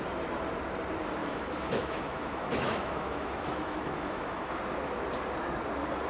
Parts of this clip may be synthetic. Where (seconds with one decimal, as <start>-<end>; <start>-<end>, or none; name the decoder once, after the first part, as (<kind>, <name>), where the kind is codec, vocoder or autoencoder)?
1.2-4.6 (autoencoder, DAC-VAE)